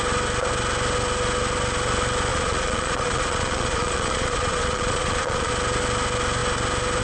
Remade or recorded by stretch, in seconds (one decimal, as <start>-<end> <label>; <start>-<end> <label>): 0.0-2.3 recorded; 2.3-5.5 remade; 5.5-7.0 recorded